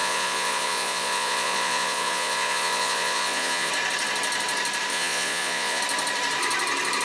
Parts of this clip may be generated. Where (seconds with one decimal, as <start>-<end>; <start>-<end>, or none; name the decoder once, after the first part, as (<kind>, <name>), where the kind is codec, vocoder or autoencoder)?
0.0-3.7 (vocoder, Vocos); 4.9-5.8